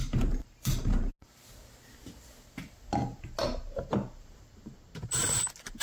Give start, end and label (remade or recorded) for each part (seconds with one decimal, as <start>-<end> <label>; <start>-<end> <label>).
0.0-1.1 remade; 1.1-5.8 recorded